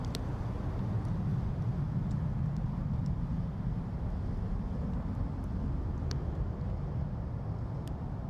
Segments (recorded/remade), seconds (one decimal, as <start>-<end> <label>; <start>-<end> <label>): 0.0-8.3 recorded